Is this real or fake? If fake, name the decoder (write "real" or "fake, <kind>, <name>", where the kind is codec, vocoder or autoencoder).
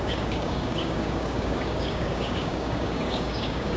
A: fake, codec, DAC